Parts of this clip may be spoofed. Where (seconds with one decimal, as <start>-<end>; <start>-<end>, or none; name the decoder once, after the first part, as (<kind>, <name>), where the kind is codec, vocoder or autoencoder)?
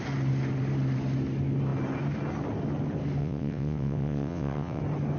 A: 3.2-4.8 (vocoder, WaveNeXt)